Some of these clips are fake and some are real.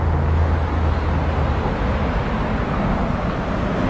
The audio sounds real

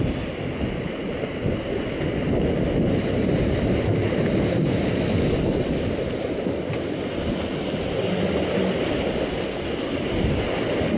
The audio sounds real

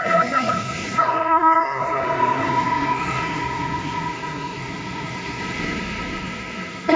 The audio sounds fake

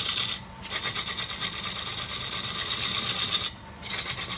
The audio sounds real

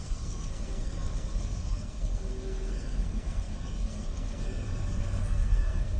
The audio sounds fake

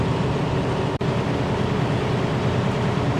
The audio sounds real